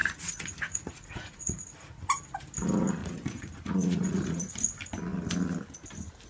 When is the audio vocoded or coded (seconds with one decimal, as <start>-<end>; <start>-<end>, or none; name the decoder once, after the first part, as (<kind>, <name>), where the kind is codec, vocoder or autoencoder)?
0.0-2.0 (vocoder, Vocos); 3.0-4.5